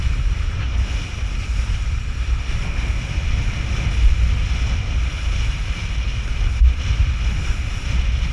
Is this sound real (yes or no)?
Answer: yes